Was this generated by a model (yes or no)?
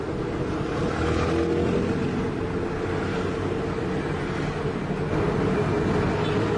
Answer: no